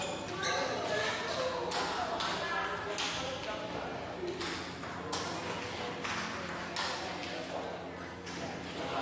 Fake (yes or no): no